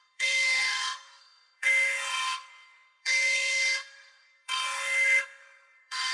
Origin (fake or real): fake